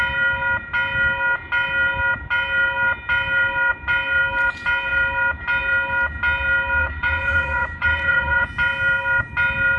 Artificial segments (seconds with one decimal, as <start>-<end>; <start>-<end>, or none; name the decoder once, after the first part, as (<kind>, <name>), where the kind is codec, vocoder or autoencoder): 6.8-8.5 (vocoder, Vocos)